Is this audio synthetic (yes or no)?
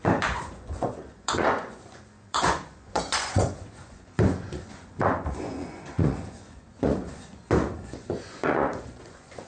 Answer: yes